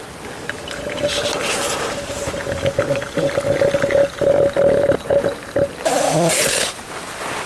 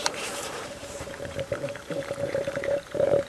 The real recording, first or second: first